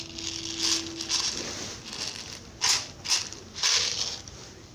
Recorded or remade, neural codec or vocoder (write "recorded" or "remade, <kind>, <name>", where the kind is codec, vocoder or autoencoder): recorded